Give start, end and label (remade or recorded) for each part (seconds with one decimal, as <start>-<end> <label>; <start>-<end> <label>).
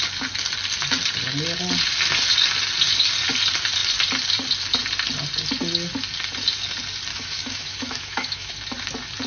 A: 0.0-7.1 recorded; 7.1-8.5 remade; 8.5-9.3 recorded